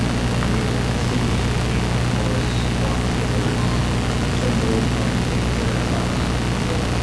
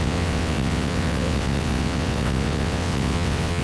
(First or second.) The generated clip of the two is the second